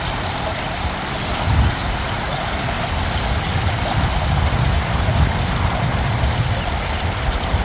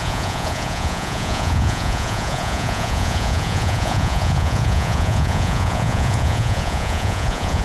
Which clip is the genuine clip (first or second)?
first